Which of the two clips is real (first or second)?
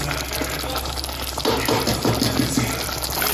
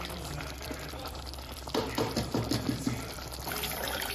first